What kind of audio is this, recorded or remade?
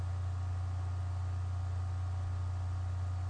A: recorded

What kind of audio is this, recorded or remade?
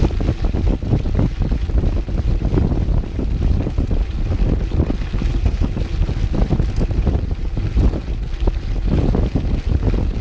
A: recorded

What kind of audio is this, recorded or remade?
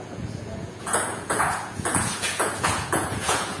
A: remade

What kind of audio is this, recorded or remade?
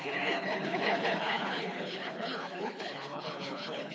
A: remade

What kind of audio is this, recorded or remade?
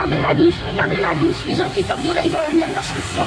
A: remade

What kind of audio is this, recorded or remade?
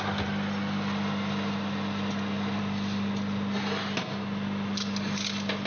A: recorded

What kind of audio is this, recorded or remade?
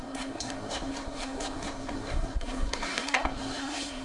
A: remade